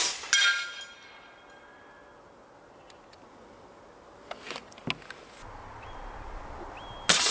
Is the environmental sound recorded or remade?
recorded